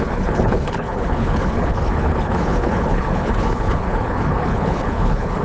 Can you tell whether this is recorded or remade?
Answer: remade